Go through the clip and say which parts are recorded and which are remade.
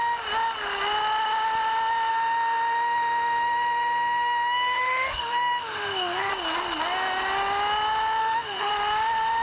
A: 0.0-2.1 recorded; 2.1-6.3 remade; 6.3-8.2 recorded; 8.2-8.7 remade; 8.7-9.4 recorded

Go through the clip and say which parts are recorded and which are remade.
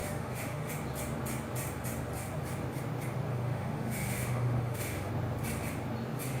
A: 0.0-0.7 remade; 0.7-3.3 recorded; 3.3-5.1 remade; 5.1-6.4 recorded